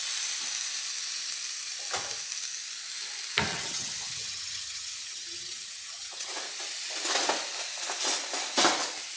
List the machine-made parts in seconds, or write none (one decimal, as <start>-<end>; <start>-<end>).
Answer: 3.5-6.3